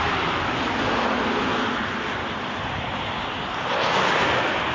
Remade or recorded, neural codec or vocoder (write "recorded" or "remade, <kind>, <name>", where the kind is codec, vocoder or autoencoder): recorded